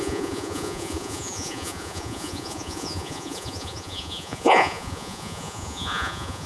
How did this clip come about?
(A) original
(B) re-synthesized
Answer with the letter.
B